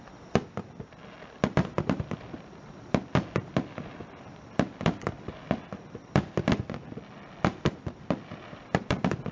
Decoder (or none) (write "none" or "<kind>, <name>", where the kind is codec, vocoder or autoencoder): none